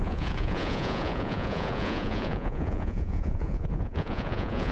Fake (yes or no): yes